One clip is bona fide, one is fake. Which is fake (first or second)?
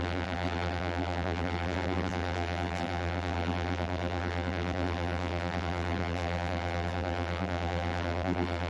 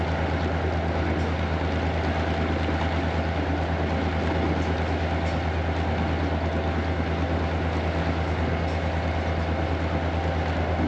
first